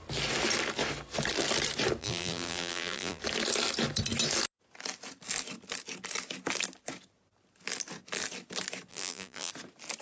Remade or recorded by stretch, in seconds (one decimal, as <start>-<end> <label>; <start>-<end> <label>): 0.0-2.0 recorded; 2.0-3.2 remade; 3.2-8.9 recorded; 8.9-9.5 remade; 9.5-10.0 recorded